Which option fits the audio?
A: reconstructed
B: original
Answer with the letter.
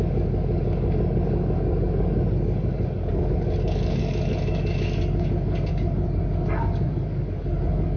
A